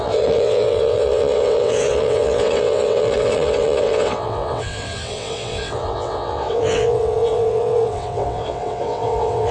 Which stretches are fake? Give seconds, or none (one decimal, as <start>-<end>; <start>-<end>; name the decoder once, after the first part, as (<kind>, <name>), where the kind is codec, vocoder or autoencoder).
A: 0.0-9.5 (vocoder, WaveNeXt)